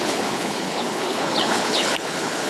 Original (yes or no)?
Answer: no